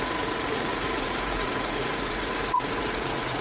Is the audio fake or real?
fake